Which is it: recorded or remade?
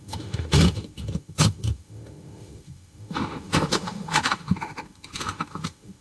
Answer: remade